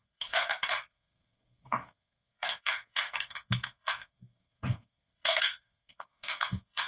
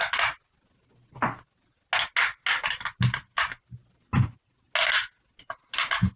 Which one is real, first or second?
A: second